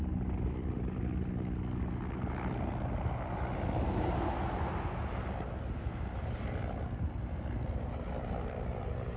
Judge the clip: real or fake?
real